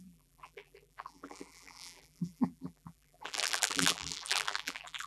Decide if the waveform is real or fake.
fake